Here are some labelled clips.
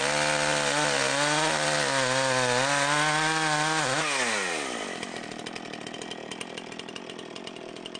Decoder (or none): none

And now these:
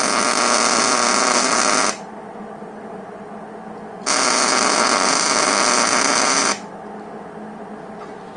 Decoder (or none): none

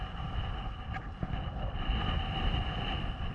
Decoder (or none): none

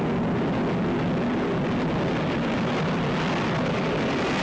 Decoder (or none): none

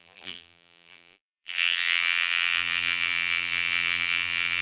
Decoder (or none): vocoder, BigVGAN v2